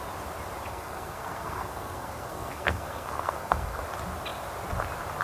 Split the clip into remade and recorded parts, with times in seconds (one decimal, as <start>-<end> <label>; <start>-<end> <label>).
0.0-0.7 recorded; 0.7-3.8 remade; 3.8-5.2 recorded